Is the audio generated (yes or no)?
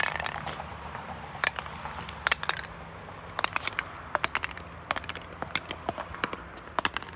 no